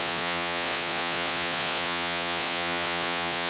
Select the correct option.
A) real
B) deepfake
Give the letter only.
B